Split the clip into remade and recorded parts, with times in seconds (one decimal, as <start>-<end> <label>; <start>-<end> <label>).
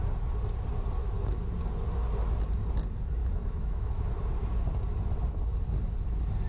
0.0-1.0 recorded; 1.0-1.5 remade; 1.5-3.2 recorded; 3.2-4.0 remade; 4.0-6.5 recorded